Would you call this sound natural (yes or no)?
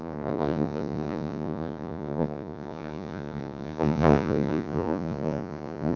no